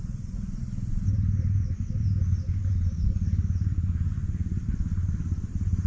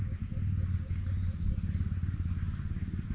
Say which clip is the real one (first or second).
second